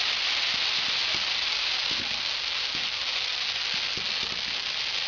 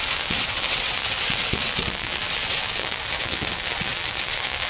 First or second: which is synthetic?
second